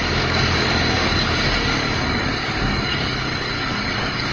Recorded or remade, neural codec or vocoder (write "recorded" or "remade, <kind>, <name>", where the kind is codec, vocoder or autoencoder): remade, codec, DAC